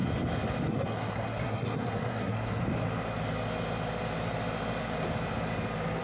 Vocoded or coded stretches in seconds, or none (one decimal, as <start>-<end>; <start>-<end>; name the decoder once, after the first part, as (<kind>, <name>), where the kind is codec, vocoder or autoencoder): 0.7-2.6 (codec, SNAC)